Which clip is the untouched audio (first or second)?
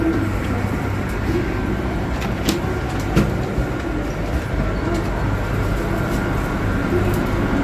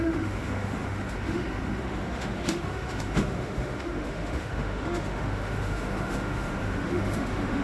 first